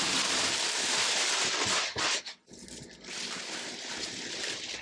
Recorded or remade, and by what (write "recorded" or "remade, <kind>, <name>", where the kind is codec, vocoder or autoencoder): recorded